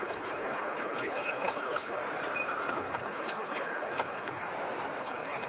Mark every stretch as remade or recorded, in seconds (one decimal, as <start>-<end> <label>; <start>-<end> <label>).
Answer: 0.0-2.0 remade; 2.0-2.7 recorded; 2.7-4.5 remade; 4.5-5.0 recorded; 5.0-5.5 remade